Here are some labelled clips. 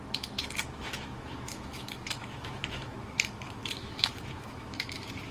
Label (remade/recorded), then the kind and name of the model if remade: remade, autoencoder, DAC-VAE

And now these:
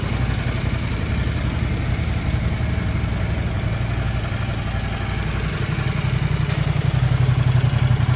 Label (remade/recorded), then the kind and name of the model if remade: recorded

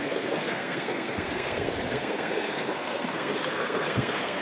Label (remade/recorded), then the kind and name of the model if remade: remade, codec, SNAC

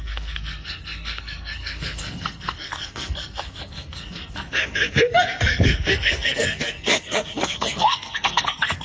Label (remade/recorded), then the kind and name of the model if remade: remade, codec, SNAC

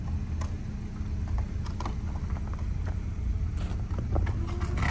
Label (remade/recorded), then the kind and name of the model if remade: recorded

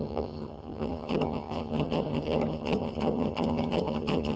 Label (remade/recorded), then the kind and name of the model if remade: remade, vocoder, HiFi-GAN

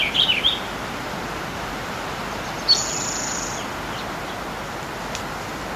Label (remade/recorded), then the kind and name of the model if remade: recorded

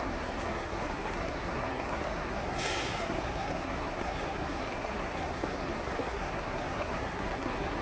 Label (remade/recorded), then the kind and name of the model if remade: remade, codec, SNAC